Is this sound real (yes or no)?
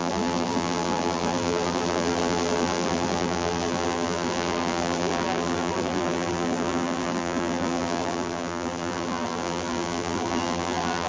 no